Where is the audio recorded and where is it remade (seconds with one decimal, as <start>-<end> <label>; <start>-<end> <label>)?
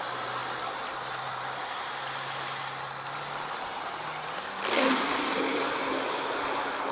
0.0-6.9 recorded